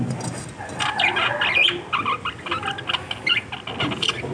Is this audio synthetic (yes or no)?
no